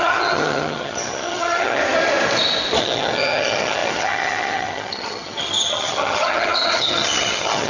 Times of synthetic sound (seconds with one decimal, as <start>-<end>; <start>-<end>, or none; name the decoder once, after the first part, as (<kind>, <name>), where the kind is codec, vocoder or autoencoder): 0.0-1.8 (vocoder, HiFi-GAN); 2.8-7.7